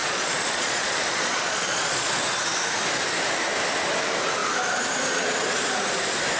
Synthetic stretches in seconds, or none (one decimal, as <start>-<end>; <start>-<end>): 0.0-2.1